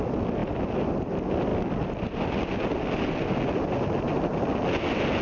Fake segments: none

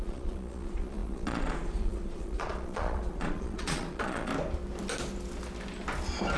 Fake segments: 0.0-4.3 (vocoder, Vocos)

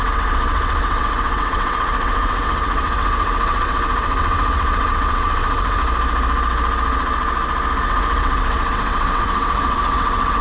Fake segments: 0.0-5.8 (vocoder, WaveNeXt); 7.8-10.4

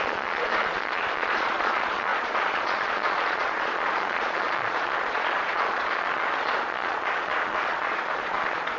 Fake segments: 0.0-8.8 (vocoder, Vocos)